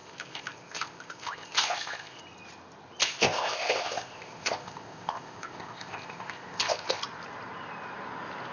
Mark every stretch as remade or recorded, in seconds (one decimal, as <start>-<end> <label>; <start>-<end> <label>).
0.0-2.2 remade; 2.2-3.0 recorded; 3.0-7.0 remade; 7.0-8.5 recorded